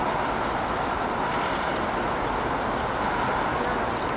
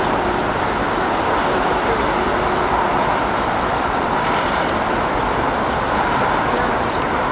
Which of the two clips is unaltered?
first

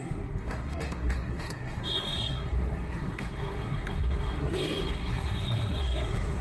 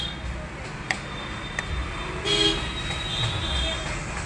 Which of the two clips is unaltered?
second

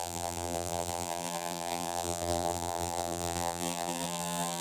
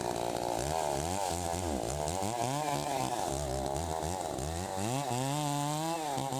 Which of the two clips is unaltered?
second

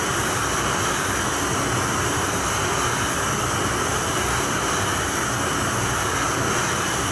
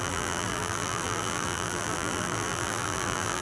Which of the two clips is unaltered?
first